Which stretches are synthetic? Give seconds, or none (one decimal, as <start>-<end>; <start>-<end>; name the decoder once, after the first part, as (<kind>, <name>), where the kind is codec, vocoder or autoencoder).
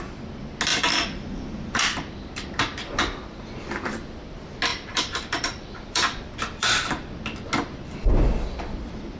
0.7-1.8 (vocoder, BigVGAN v2); 4.7-7.2